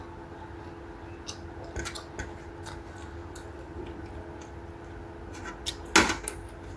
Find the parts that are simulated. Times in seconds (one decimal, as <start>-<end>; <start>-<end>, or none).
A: none